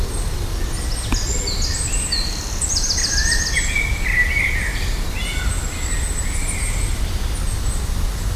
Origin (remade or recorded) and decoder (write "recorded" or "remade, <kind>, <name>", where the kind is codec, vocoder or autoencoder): recorded